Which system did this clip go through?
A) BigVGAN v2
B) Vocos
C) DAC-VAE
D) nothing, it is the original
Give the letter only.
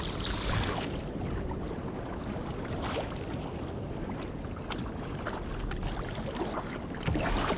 D